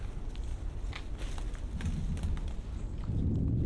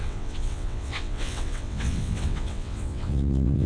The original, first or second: first